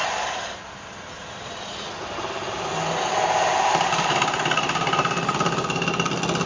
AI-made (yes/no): no